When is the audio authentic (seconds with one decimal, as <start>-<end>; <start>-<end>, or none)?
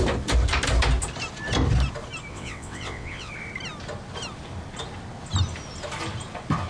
0.0-2.3; 3.3-6.7